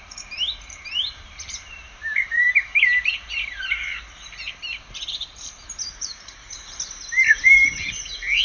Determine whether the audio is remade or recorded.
remade